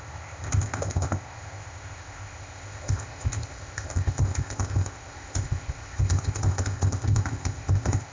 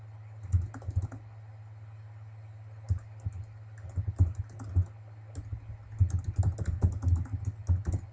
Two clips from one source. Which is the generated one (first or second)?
first